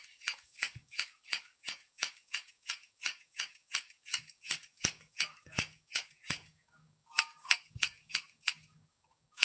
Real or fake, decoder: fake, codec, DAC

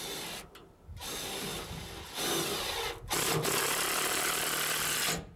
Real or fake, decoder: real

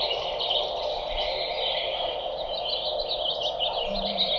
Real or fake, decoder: real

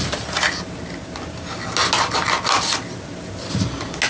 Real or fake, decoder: real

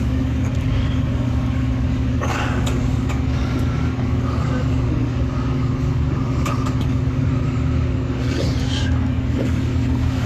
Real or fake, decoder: fake, codec, DAC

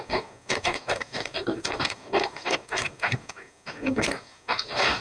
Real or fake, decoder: fake, codec, DAC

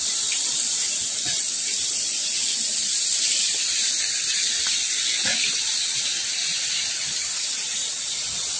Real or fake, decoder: real